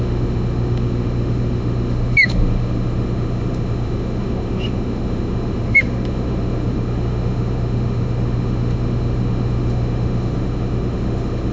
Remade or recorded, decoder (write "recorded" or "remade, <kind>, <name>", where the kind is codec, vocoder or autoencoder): remade, autoencoder, DAC-VAE